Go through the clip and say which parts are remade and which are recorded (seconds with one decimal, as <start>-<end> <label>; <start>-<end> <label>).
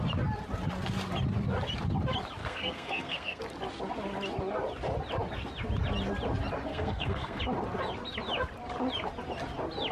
0.0-2.4 recorded; 2.4-3.4 remade; 3.4-6.7 recorded; 6.7-7.4 remade; 7.4-9.9 recorded